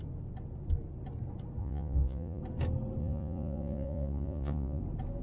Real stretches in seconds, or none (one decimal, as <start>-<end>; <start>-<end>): 0.0-1.6; 2.4-3.0; 4.8-5.2

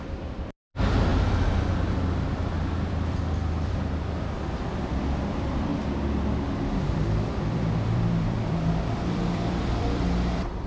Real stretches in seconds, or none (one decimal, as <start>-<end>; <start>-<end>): 5.7-6.9

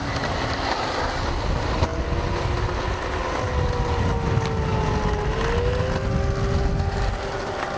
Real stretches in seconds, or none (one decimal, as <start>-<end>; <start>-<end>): 0.0-7.8

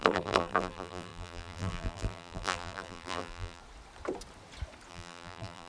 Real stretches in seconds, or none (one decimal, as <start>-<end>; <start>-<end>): 3.6-4.9

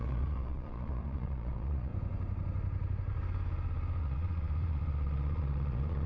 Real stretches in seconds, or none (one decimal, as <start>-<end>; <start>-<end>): 1.9-4.0

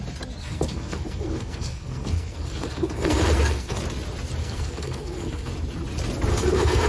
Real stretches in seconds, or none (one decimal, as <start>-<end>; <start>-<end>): 0.0-0.4; 3.8-4.4; 5.5-6.3

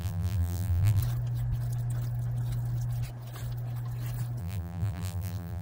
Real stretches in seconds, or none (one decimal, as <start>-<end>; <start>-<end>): 1.0-4.4

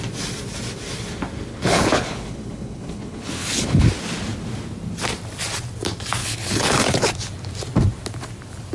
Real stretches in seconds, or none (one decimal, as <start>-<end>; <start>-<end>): 0.0-1.5; 3.9-6.2; 7.1-8.7